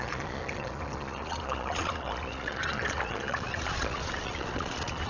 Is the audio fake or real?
fake